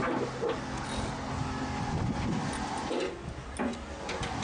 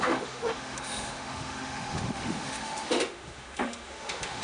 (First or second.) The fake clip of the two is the second